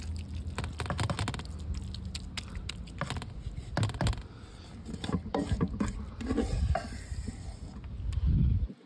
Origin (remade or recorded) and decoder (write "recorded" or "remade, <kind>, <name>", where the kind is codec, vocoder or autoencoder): recorded